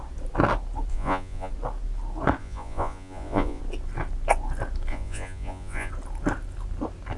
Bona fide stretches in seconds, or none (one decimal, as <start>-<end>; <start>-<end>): 0.0-0.9; 1.5-2.4; 3.6-4.9; 5.9-7.2